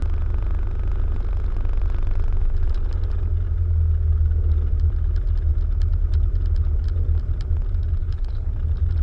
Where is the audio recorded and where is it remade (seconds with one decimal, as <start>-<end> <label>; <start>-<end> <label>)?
0.0-8.0 recorded; 8.0-8.5 remade; 8.5-9.0 recorded